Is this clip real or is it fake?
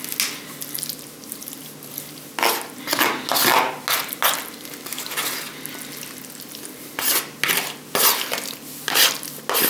real